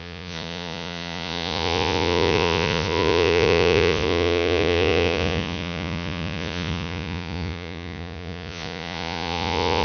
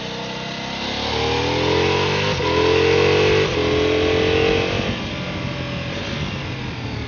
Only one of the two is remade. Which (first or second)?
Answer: first